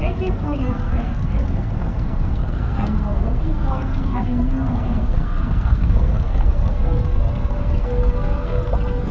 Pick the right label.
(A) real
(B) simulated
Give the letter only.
B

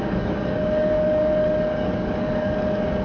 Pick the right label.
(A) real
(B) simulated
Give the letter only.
B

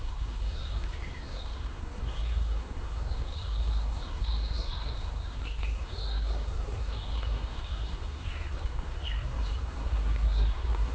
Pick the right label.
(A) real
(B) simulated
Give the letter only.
B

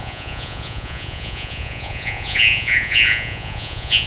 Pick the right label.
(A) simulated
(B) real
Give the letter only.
A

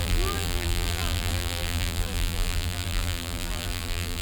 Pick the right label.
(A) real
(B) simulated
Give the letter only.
B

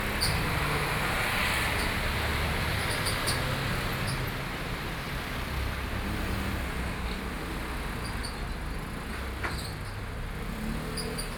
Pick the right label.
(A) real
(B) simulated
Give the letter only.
A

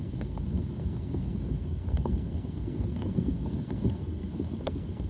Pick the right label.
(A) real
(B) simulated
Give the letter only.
B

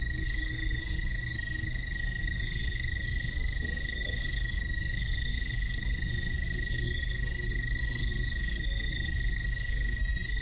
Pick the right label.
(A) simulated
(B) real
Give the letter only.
A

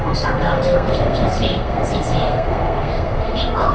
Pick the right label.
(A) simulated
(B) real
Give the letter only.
A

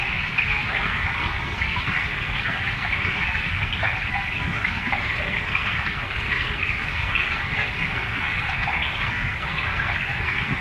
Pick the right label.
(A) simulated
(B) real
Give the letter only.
A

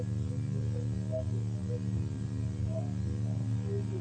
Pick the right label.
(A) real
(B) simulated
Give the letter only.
A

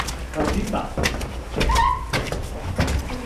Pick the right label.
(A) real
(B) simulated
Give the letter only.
A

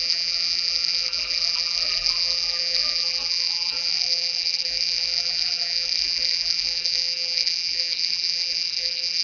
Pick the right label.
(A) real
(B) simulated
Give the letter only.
B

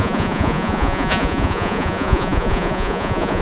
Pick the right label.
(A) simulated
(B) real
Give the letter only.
A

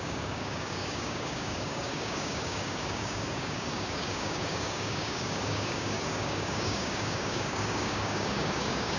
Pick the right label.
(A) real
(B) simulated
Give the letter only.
B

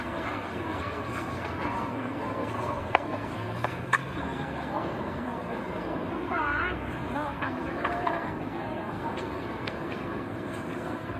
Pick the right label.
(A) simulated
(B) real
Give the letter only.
A